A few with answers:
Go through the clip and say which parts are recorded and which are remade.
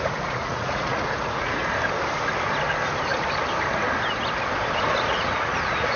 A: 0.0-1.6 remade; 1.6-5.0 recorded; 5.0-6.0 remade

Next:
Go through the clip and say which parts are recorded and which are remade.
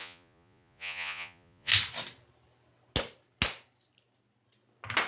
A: 0.0-1.7 remade; 1.7-5.1 recorded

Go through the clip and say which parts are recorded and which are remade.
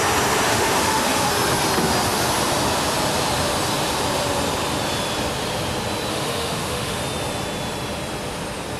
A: 0.0-0.5 recorded; 0.5-1.3 remade; 1.3-6.1 recorded; 6.1-7.0 remade; 7.0-8.8 recorded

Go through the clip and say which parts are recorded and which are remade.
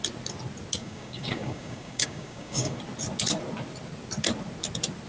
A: 0.0-0.8 recorded; 0.8-2.8 remade; 2.8-5.1 recorded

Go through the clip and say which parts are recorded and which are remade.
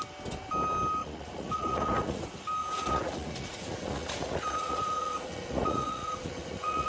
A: 0.0-1.0 recorded; 1.0-2.2 remade; 2.2-2.6 recorded; 2.6-6.9 remade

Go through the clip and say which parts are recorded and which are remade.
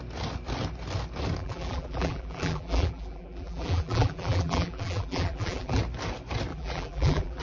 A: 0.0-1.4 recorded; 1.4-5.8 remade; 5.8-6.5 recorded; 6.5-7.4 remade